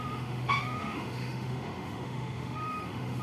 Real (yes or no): no